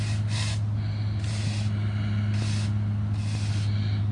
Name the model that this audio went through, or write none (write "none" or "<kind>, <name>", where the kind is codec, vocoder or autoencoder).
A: none